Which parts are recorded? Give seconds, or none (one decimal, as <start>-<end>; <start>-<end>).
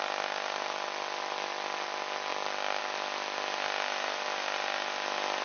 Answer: 0.0-5.4